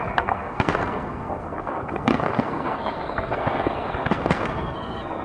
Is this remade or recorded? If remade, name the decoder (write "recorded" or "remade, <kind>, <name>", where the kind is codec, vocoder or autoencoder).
remade, codec, SNAC